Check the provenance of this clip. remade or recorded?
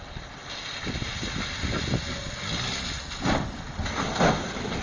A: recorded